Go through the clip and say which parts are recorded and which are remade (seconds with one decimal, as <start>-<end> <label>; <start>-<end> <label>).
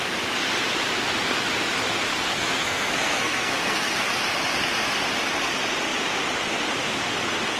0.0-2.1 recorded; 2.1-4.1 remade; 4.1-7.6 recorded